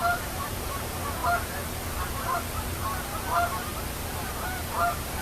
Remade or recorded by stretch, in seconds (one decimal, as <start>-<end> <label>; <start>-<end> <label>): 0.0-1.2 remade; 1.2-4.3 recorded; 4.3-5.2 remade